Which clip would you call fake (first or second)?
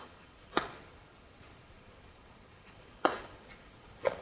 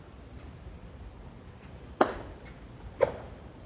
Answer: first